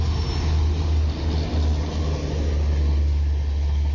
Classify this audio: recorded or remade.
recorded